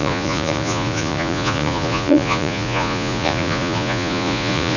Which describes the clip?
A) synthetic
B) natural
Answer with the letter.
A